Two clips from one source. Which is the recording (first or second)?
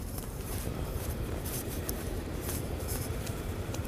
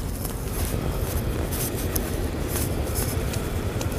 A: second